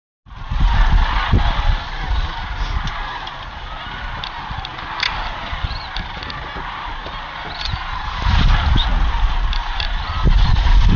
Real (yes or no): yes